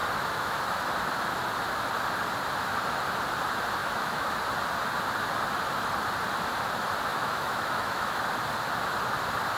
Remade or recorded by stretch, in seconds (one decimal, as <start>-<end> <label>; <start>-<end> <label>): 0.0-0.6 remade; 0.6-3.8 recorded; 3.8-4.4 remade; 4.4-7.1 recorded; 7.1-8.2 remade; 8.2-9.6 recorded